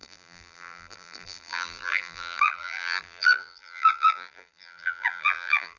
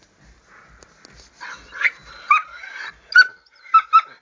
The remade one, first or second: first